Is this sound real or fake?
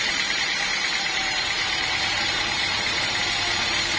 fake